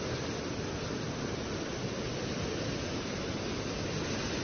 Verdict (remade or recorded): recorded